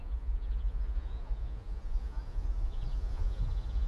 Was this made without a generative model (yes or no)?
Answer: no